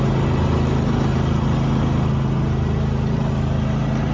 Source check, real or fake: real